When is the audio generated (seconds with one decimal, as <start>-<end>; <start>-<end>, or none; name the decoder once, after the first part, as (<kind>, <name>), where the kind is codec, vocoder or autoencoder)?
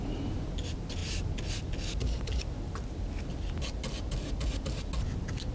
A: none